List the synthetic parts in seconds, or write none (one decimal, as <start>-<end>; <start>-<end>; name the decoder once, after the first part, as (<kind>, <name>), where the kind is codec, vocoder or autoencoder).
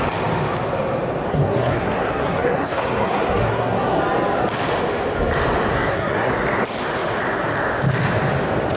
1.3-4.0 (codec, SNAC); 5.7-6.3